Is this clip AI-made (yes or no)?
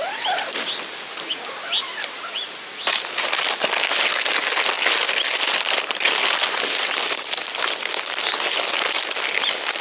no